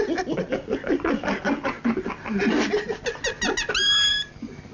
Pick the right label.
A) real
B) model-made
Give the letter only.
A